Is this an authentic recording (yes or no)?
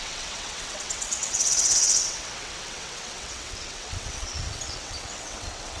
no